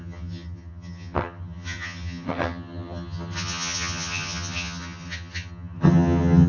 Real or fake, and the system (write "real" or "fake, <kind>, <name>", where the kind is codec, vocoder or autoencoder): fake, vocoder, HiFi-GAN